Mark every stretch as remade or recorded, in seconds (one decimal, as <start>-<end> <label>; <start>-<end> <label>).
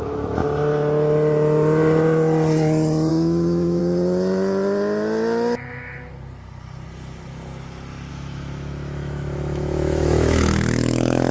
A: 0.0-0.4 remade; 0.4-3.1 recorded; 3.1-3.8 remade; 3.8-8.1 recorded; 8.1-11.3 remade